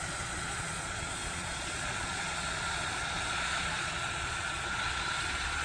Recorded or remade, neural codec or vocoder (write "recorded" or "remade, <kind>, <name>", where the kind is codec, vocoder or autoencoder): remade, vocoder, Vocos